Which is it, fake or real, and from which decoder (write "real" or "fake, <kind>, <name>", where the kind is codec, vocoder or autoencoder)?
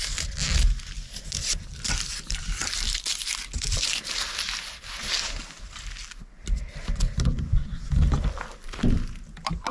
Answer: real